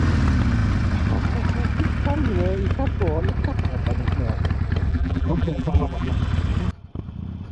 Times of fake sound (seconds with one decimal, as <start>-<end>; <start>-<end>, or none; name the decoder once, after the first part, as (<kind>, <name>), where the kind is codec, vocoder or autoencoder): 4.9-6.1 (vocoder, BigVGAN v2)